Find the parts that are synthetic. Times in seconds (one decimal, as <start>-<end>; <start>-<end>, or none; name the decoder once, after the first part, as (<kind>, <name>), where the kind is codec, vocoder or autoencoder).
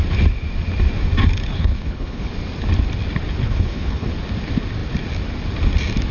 1.5-2.3 (codec, HILCodec); 3.4-4.1